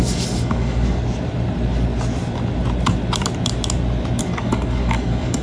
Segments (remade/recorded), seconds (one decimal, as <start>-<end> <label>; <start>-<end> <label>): 0.0-1.0 remade; 1.0-4.2 recorded; 4.2-5.4 remade